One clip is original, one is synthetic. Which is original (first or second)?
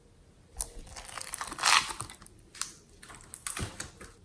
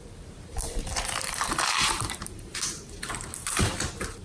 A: first